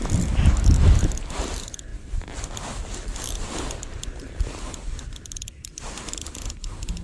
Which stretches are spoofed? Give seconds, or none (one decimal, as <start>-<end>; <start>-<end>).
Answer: 1.9-5.5